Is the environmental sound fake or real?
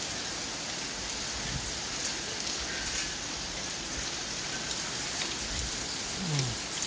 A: real